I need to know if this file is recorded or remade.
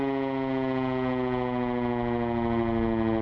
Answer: recorded